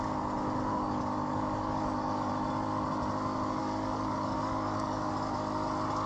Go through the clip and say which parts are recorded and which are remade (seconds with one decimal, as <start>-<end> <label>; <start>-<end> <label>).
0.0-0.7 recorded; 0.7-2.3 remade; 2.3-3.6 recorded; 3.6-5.1 remade; 5.1-6.1 recorded